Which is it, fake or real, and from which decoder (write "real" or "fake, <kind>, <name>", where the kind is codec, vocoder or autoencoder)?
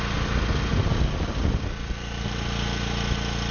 real